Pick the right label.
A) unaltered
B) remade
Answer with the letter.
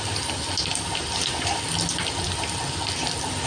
A